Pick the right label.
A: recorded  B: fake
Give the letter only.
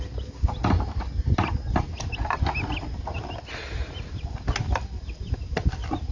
A